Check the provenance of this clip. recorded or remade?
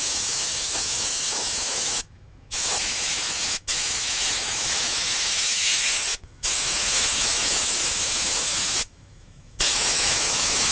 remade